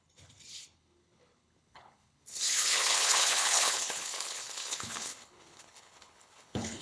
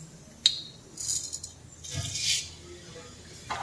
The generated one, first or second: first